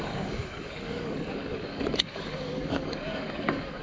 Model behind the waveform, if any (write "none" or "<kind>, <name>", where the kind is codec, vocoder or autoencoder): codec, DAC